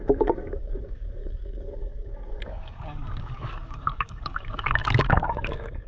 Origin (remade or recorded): remade